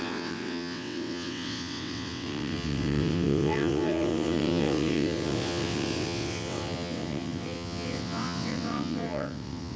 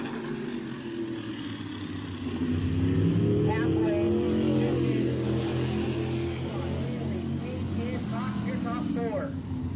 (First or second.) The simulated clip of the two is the first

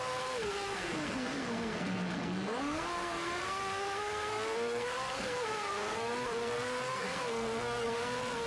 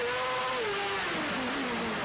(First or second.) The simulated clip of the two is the first